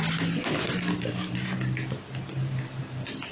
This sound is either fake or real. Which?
real